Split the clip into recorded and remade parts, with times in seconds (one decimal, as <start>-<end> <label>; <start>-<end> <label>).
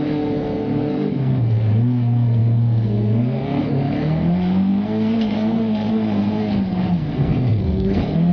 0.0-8.3 remade